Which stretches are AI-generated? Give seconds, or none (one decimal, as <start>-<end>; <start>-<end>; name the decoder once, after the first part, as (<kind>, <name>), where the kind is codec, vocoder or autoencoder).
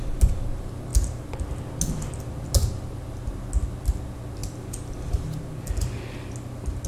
none